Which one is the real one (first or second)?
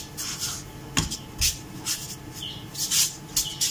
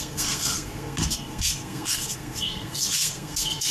first